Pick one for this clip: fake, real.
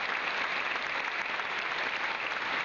real